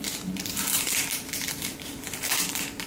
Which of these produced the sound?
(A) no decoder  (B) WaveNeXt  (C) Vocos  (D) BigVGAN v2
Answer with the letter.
D